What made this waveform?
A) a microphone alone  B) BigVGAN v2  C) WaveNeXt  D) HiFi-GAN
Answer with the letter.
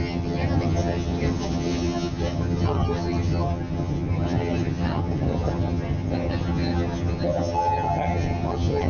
D